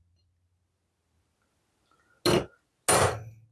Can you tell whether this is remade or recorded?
recorded